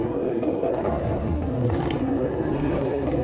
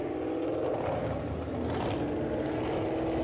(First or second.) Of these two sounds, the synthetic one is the first